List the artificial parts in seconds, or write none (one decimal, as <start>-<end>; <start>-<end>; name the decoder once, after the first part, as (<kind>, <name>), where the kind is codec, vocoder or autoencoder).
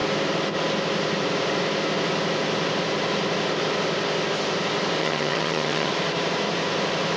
5.0-5.9 (vocoder, HiFi-GAN)